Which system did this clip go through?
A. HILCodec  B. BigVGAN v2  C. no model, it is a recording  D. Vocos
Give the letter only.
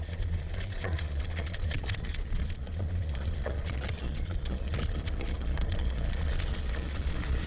D